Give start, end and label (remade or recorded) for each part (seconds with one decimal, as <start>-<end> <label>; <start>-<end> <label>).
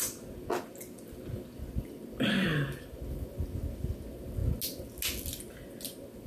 0.0-6.3 recorded